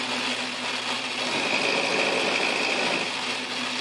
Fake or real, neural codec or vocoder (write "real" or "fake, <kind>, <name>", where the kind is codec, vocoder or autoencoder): real